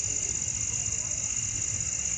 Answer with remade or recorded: recorded